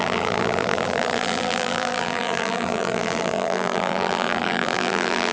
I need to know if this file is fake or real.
fake